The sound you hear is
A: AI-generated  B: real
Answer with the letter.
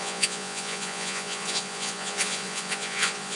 A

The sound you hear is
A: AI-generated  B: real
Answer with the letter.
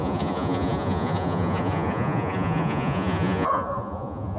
A